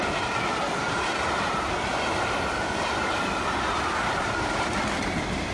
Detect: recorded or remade recorded